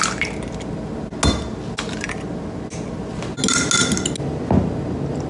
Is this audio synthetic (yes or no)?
no